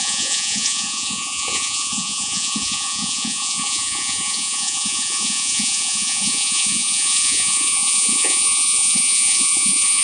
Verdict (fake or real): fake